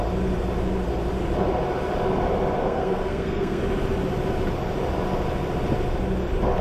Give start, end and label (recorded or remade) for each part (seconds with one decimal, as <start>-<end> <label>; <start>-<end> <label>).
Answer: 0.0-2.6 recorded; 2.6-3.6 remade; 3.6-6.6 recorded

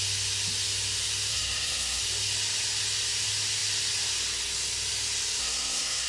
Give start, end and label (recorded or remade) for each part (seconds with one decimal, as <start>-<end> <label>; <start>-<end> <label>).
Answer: 0.0-1.3 recorded; 1.3-2.0 remade; 2.0-5.4 recorded; 5.4-6.1 remade

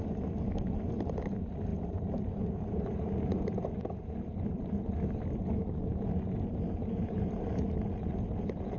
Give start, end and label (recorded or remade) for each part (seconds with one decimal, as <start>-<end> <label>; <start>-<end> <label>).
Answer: 0.0-1.7 recorded; 1.7-2.4 remade; 2.4-8.8 recorded

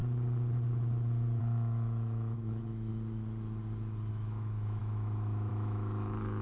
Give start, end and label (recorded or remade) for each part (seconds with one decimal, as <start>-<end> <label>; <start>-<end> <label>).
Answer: 0.0-1.4 recorded; 1.4-2.9 remade; 2.9-4.1 recorded; 4.1-6.4 remade

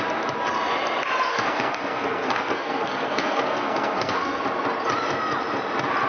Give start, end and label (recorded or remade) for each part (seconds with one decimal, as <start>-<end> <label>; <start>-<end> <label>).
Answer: 0.0-1.3 recorded; 1.3-4.4 remade; 4.4-6.1 recorded

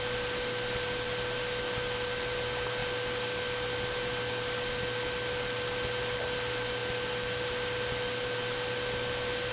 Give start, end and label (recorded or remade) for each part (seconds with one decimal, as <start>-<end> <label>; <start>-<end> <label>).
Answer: 0.0-9.5 recorded

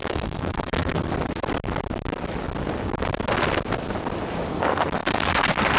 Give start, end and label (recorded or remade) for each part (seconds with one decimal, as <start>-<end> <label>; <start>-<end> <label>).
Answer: 0.0-1.0 remade; 1.0-4.5 recorded; 4.5-5.8 remade